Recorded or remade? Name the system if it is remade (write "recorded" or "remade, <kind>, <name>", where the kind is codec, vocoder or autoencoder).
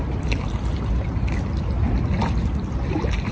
recorded